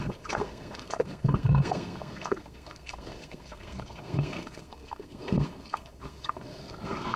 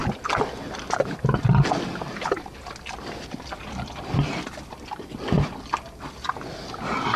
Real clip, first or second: second